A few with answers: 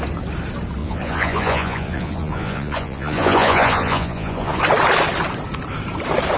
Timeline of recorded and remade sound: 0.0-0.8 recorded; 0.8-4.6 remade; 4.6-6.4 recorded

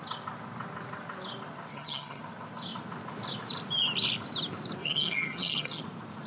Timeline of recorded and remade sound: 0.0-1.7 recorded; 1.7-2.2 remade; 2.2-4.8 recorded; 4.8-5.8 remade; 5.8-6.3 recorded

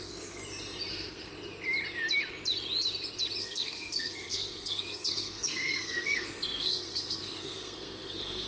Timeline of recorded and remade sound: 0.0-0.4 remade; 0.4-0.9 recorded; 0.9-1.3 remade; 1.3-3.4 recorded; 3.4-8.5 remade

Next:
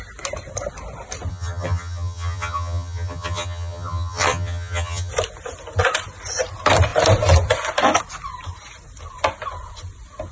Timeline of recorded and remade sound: 0.0-1.3 recorded; 1.3-5.1 remade; 5.1-10.3 recorded

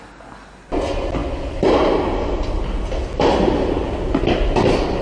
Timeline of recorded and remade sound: 0.0-5.0 recorded

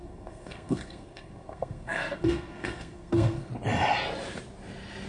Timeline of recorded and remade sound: 0.0-3.5 remade; 3.5-5.1 recorded

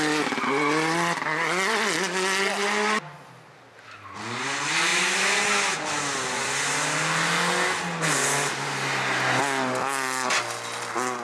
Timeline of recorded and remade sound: 0.0-11.2 recorded

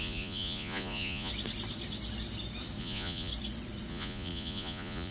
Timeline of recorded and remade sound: 0.0-1.3 remade; 1.3-2.8 recorded; 2.8-3.3 remade; 3.3-3.9 recorded; 3.9-5.1 remade